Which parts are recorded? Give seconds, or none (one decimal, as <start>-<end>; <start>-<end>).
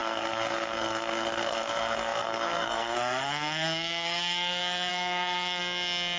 5.6-6.2